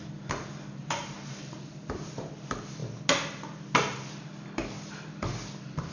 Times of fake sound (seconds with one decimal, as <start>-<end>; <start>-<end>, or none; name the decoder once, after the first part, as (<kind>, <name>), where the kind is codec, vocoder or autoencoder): 0.8-2.3 (vocoder, BigVGAN v2)